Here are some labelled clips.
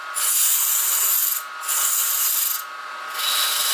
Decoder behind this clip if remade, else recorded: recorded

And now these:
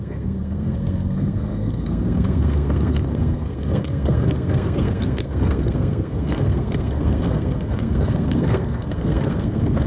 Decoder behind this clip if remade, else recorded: remade, codec, SNAC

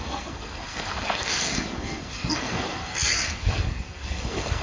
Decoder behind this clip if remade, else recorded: remade, codec, SNAC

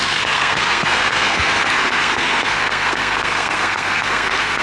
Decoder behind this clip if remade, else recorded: remade, codec, SNAC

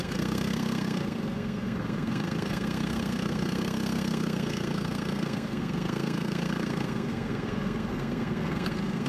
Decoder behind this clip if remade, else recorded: remade, codec, SNAC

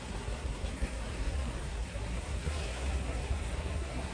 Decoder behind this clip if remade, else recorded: remade, codec, SNAC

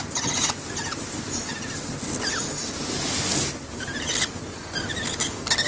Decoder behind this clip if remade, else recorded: recorded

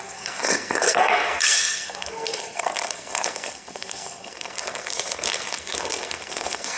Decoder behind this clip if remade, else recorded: remade, codec, SNAC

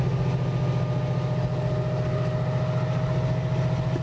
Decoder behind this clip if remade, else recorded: recorded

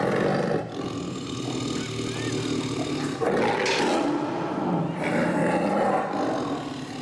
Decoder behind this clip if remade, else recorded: recorded